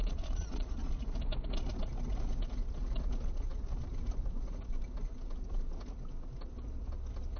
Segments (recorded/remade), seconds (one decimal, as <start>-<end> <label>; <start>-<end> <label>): 0.0-0.7 remade; 0.7-7.4 recorded